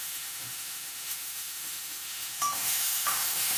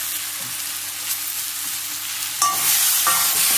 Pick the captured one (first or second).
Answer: second